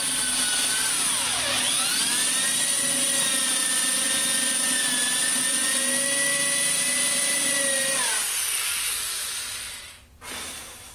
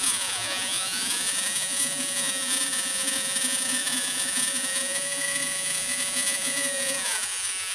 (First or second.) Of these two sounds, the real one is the first